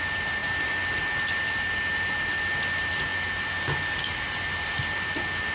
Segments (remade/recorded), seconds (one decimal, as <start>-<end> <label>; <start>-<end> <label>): 0.0-5.5 recorded